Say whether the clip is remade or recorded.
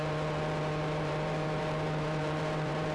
remade